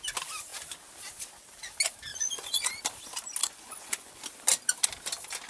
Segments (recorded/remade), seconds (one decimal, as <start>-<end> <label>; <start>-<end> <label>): 0.0-2.1 recorded; 2.1-2.8 remade; 2.8-3.4 recorded; 3.4-4.2 remade; 4.2-5.5 recorded